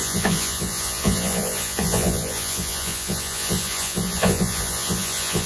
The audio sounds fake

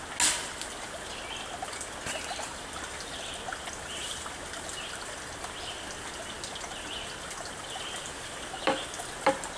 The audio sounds real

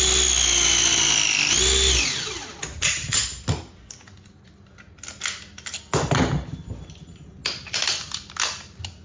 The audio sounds real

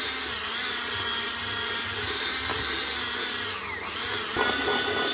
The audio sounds real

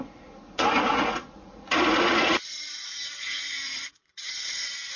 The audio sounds fake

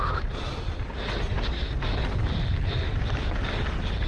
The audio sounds real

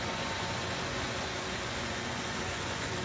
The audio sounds fake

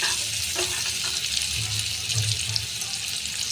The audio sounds real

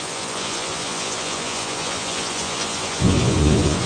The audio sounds fake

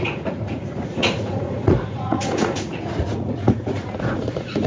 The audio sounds fake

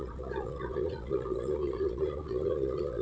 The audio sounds fake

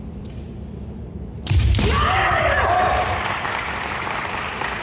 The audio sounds real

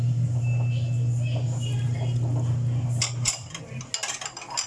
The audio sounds real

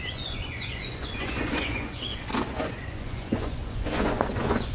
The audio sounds fake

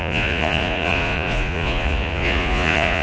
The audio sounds fake